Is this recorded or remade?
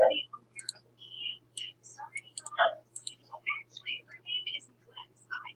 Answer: recorded